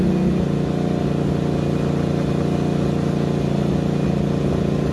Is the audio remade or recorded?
recorded